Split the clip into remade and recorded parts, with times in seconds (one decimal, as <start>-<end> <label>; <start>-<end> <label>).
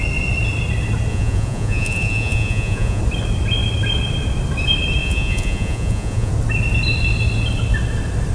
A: 0.0-1.1 recorded; 1.1-3.0 remade; 3.0-5.0 recorded; 5.0-6.3 remade; 6.3-8.3 recorded